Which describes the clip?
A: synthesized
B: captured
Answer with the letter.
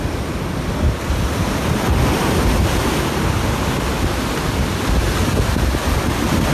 B